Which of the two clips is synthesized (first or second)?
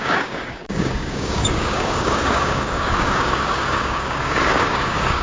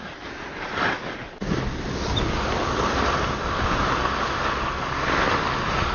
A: first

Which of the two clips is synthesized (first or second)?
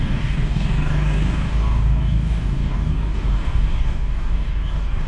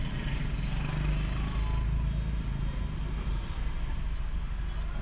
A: first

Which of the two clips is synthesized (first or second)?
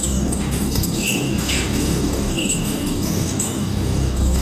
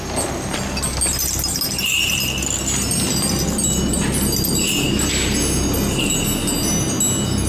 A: first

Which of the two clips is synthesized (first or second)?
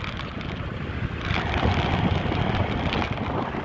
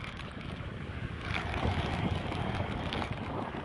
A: second